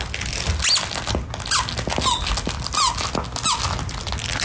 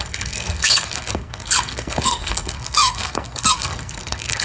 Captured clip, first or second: first